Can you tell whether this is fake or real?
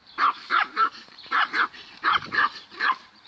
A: fake